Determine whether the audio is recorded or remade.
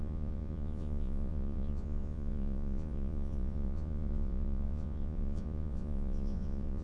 remade